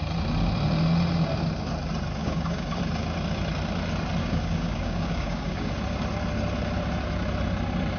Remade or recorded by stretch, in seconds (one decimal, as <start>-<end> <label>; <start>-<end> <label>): 0.0-2.2 recorded; 2.2-2.8 remade; 2.8-4.2 recorded; 4.2-5.7 remade; 5.7-8.0 recorded